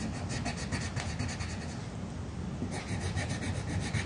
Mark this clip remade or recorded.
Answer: recorded